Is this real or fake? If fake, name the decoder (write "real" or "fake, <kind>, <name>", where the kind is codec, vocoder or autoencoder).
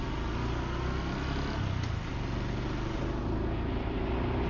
real